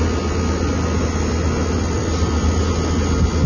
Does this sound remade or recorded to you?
recorded